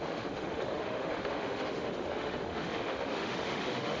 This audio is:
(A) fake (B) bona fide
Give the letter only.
A